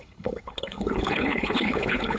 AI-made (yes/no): yes